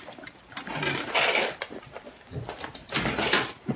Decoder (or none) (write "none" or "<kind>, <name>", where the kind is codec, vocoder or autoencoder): none